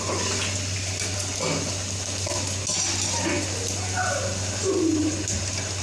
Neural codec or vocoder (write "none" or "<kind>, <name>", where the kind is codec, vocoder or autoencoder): none